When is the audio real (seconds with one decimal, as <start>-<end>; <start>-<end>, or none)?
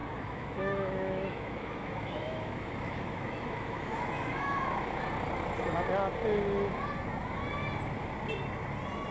4.8-9.1